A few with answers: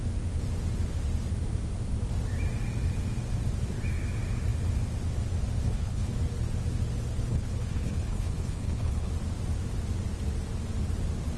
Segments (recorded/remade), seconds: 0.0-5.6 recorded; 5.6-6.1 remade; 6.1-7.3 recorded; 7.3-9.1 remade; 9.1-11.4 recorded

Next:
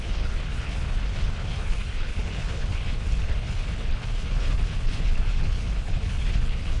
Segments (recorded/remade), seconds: 0.0-6.8 remade

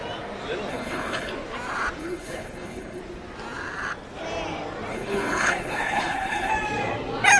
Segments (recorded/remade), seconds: 0.0-0.7 recorded; 0.7-1.3 remade; 1.3-2.0 recorded; 2.0-3.0 remade; 3.0-4.9 recorded; 4.9-6.5 remade; 6.5-7.4 recorded

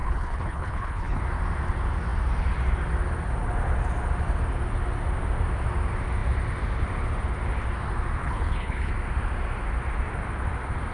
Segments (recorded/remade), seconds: 0.0-1.2 remade; 1.2-8.2 recorded; 8.2-8.9 remade; 8.9-10.9 recorded

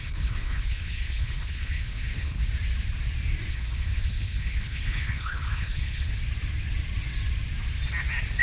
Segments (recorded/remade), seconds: 0.0-2.4 remade; 2.4-3.5 recorded; 3.5-6.1 remade; 6.1-8.4 recorded

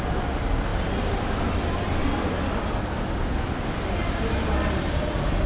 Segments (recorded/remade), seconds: 0.0-5.5 recorded

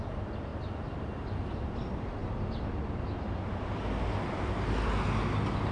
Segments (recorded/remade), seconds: 0.0-5.7 recorded

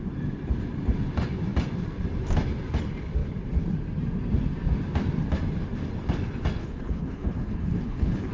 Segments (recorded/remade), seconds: 0.0-6.6 recorded; 6.6-8.3 remade